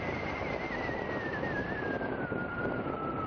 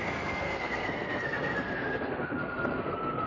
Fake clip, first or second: second